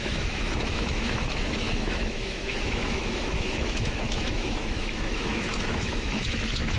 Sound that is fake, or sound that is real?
fake